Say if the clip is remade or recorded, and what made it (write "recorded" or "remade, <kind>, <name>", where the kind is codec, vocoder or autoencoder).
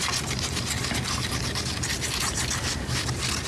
recorded